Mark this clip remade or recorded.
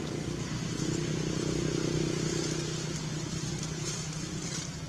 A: recorded